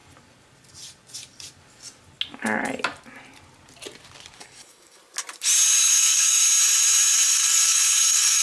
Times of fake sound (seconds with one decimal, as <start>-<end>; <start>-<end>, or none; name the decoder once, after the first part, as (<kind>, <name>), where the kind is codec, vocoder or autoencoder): 4.4-5.0 (codec, DAC); 5.8-6.4; 7.3-8.4